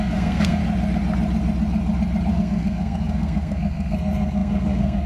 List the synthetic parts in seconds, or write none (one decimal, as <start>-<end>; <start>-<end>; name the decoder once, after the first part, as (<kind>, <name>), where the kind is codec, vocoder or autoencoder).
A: 0.0-0.6 (codec, SNAC); 2.3-5.1